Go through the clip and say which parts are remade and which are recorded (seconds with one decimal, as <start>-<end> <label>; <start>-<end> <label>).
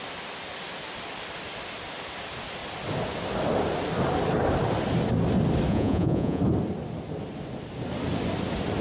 0.0-5.7 recorded; 5.7-6.4 remade; 6.4-8.8 recorded